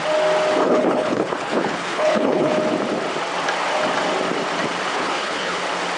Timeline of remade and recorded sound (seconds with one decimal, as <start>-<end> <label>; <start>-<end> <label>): 0.0-0.6 recorded; 0.6-2.5 remade; 2.5-4.9 recorded; 4.9-5.6 remade; 5.6-6.0 recorded